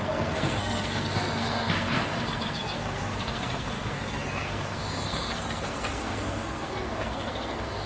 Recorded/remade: remade